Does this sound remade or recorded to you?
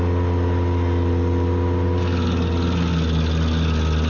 recorded